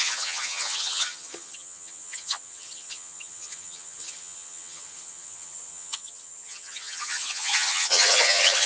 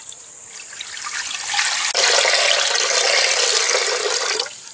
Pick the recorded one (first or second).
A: second